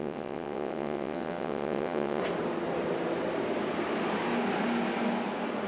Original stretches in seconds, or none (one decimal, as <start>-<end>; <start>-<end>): 2.2-5.7